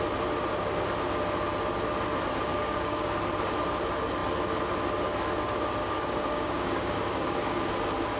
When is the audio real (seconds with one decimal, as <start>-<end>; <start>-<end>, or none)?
0.0-2.5; 3.1-5.8; 7.7-8.2